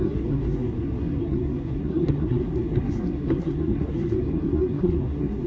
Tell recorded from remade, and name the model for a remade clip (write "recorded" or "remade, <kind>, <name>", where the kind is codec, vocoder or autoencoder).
remade, codec, SNAC